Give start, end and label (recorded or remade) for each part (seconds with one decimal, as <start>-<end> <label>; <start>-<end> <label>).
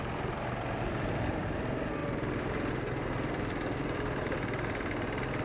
0.0-5.4 recorded